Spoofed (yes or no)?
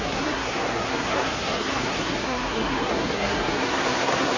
yes